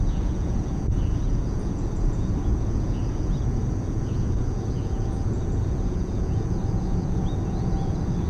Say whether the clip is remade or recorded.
remade